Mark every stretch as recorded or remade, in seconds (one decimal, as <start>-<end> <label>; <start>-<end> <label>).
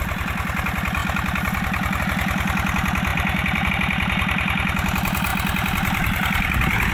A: 0.0-3.1 recorded; 3.1-3.7 remade; 3.7-6.9 recorded